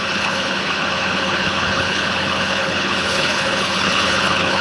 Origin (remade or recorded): remade